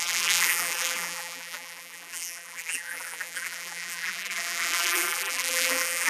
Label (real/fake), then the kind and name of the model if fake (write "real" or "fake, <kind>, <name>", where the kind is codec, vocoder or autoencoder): fake, vocoder, BigVGAN v2